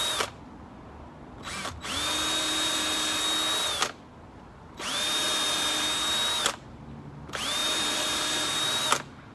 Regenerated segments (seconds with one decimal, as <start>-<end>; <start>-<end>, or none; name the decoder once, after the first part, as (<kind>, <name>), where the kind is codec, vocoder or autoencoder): 7.6-8.8 (vocoder, BigVGAN v2)